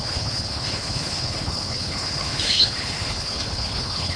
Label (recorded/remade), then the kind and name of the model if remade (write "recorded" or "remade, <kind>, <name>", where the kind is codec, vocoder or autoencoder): remade, codec, HILCodec